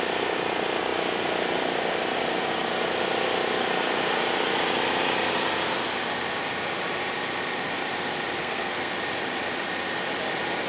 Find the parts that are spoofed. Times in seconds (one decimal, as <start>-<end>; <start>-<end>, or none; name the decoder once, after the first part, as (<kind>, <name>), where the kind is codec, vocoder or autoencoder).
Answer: 8.4-8.9 (codec, SNAC)